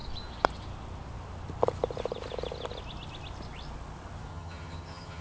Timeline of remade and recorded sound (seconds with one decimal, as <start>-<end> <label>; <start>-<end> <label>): 0.0-4.3 recorded; 4.3-5.2 remade